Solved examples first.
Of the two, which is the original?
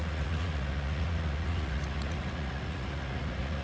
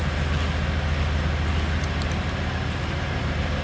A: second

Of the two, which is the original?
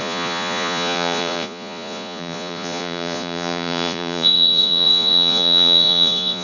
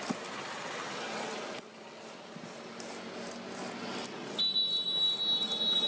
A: second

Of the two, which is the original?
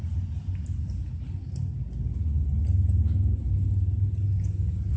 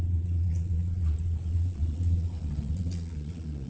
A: first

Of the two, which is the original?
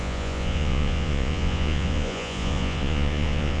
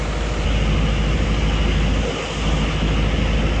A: second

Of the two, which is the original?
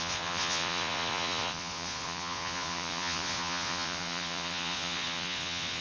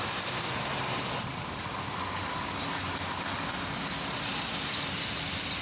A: second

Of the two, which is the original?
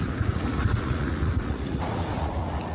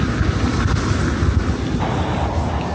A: second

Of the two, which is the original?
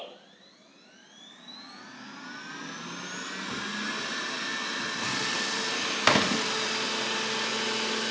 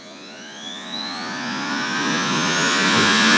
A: first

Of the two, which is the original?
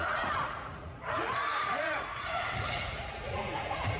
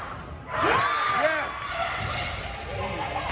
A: second